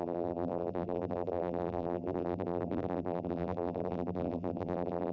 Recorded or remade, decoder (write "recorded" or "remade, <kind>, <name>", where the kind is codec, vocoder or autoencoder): remade, vocoder, BigVGAN v2